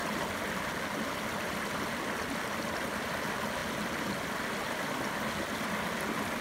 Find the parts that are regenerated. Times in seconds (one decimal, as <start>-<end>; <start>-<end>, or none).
0.0-0.6